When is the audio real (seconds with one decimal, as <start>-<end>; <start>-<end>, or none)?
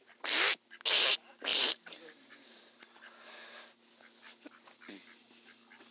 0.0-1.5; 3.2-5.9